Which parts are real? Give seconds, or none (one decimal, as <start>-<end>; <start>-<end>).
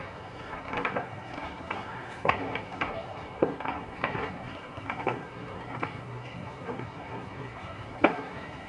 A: none